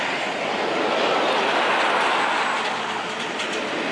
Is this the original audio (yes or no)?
yes